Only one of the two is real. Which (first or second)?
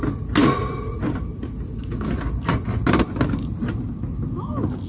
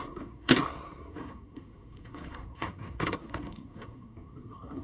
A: first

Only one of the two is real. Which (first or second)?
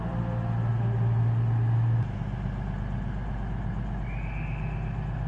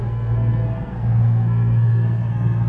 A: first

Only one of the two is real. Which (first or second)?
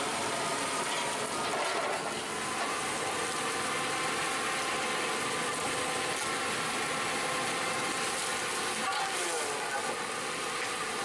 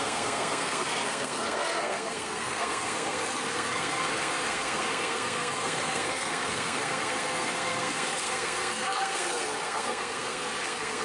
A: first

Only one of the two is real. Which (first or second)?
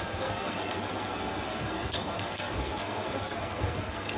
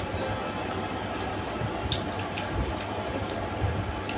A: second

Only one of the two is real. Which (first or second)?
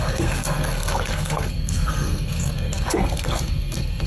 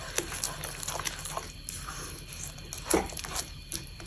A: second